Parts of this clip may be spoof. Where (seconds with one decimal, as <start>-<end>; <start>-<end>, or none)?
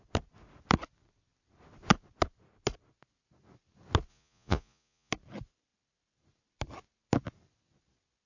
4.1-5.1